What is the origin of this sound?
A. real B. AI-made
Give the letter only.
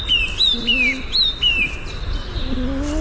A